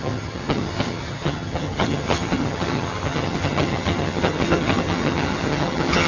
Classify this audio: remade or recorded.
remade